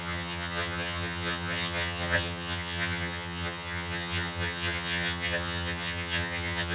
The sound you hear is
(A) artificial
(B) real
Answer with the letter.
A